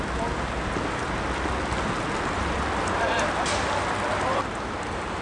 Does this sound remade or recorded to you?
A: recorded